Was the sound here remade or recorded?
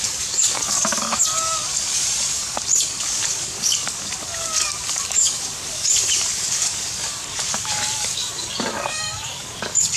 remade